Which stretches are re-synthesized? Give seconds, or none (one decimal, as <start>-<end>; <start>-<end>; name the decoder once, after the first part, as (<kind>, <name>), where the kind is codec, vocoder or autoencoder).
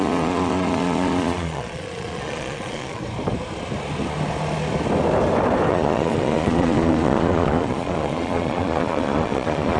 0.0-3.0 (vocoder, Vocos); 5.7-9.8